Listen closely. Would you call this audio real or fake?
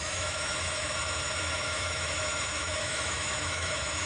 fake